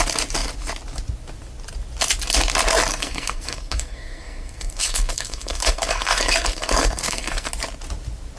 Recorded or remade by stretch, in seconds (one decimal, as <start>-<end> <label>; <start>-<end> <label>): 0.0-2.9 recorded; 2.9-7.5 remade; 7.5-8.4 recorded